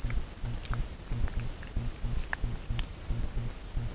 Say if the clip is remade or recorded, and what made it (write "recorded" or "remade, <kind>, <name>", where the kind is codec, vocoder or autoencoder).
recorded